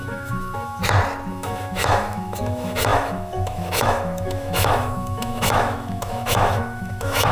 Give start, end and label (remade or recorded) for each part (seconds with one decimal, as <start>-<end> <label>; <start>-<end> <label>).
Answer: 0.0-0.8 remade; 0.8-1.3 recorded; 1.3-7.3 remade